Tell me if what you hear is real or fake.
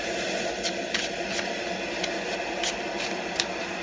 real